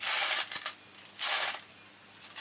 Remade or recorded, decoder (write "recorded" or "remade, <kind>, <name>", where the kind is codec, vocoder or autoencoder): recorded